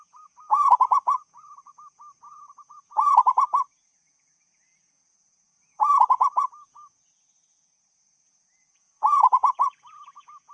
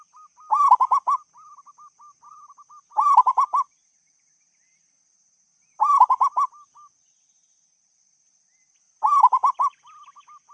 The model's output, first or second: first